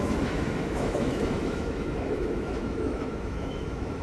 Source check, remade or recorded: remade